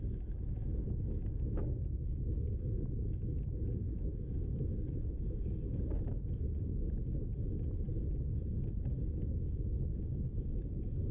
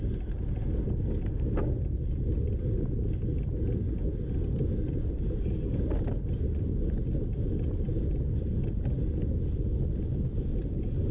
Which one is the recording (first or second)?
second